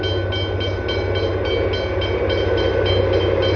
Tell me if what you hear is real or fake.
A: real